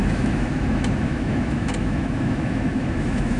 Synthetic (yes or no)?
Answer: yes